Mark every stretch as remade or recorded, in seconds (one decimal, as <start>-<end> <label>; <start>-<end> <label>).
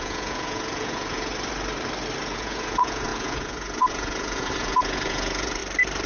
0.0-1.3 remade; 1.3-2.2 recorded; 2.2-5.6 remade; 5.6-6.1 recorded